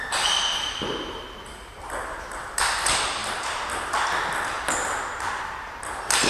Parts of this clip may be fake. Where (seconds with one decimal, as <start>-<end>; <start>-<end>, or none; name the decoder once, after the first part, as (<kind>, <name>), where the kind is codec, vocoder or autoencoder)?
none